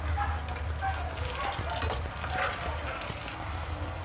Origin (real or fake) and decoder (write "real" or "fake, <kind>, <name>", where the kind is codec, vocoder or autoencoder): real